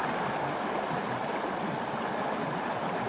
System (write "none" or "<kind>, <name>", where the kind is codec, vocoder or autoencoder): none